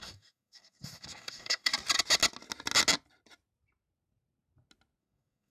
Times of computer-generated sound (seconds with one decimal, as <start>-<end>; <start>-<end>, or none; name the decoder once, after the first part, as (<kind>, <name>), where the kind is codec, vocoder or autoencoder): 0.0-1.7 (codec, DAC); 5.0-5.5